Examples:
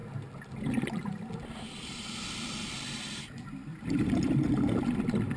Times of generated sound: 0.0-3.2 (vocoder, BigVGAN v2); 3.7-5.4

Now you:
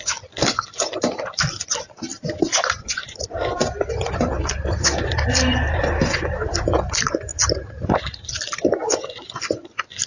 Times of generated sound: 2.1-3.4 (vocoder, BigVGAN v2); 4.6-5.8; 7.3-8.3

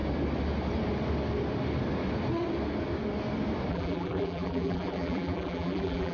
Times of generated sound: 3.7-6.1 (vocoder, BigVGAN v2)

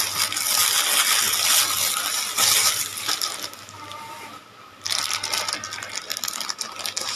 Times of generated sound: none

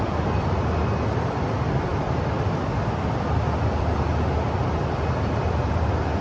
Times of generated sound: 0.0-6.2 (vocoder, BigVGAN v2)

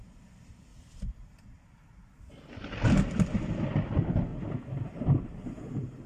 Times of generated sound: 0.0-0.7 (vocoder, BigVGAN v2); 1.4-4.3; 4.9-6.1